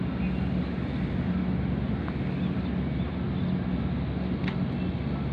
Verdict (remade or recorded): recorded